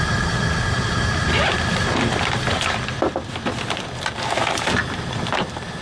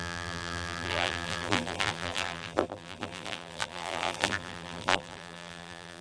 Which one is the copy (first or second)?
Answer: second